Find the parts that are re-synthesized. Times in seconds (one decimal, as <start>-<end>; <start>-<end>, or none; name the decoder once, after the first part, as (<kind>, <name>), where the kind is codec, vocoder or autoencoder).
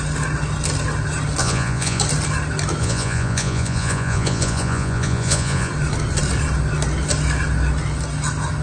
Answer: 1.4-2.0 (vocoder, Vocos); 2.8-5.7